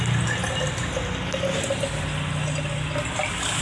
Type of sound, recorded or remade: recorded